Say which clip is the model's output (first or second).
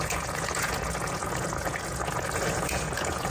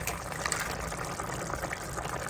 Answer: first